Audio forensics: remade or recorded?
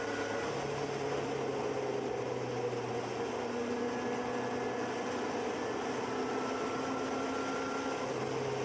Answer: recorded